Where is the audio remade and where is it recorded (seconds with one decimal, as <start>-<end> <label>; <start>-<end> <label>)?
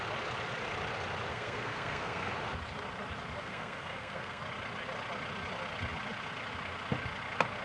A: 0.0-1.3 recorded; 1.3-2.3 remade; 2.3-3.4 recorded; 3.4-4.4 remade; 4.4-7.6 recorded